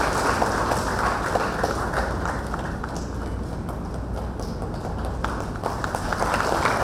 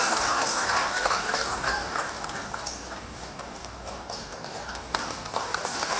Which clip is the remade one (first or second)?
second